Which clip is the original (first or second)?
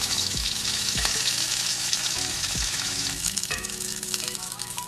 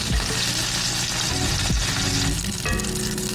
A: second